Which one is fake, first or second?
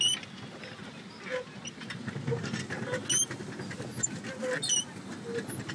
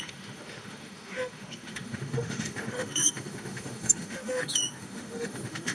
second